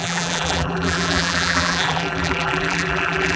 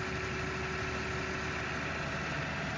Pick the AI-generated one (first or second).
first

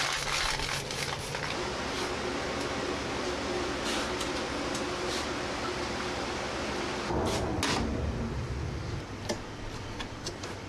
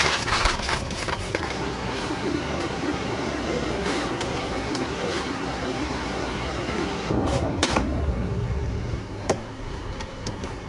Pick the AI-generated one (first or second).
second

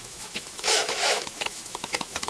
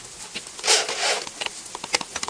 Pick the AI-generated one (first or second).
first